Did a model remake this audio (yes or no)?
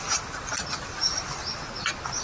no